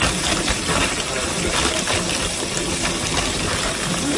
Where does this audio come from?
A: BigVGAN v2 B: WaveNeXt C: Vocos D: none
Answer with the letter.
D